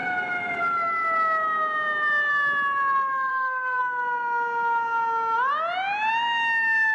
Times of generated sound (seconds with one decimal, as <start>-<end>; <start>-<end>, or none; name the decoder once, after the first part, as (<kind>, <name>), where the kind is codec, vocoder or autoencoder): 3.3-3.8 (codec, SNAC)